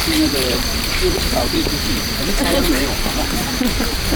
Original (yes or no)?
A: no